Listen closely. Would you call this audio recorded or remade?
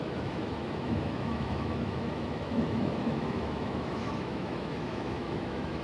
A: remade